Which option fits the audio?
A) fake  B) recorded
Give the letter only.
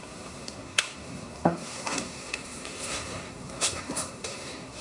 A